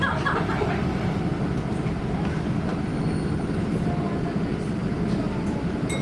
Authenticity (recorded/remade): recorded